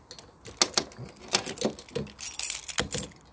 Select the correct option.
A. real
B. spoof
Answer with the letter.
A